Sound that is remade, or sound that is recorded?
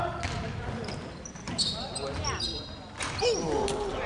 recorded